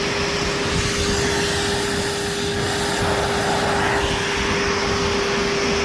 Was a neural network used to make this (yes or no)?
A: no